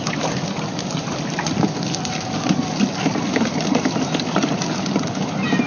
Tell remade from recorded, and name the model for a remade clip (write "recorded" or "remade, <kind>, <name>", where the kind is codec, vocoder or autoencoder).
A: recorded